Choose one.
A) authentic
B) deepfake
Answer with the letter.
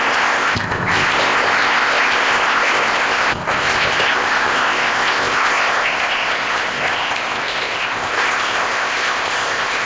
B